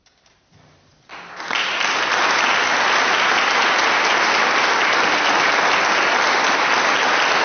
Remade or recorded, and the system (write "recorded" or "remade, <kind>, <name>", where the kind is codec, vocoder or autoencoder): recorded